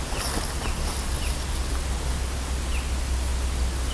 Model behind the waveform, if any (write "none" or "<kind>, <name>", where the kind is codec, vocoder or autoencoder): none